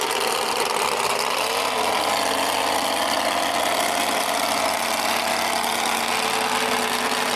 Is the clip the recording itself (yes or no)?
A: yes